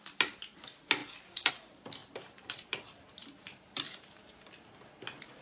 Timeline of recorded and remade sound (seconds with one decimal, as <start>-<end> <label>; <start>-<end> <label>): 0.0-2.0 recorded; 2.0-5.4 remade